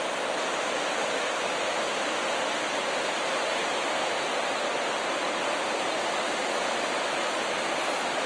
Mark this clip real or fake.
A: real